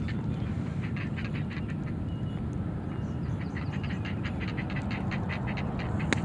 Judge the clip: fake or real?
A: real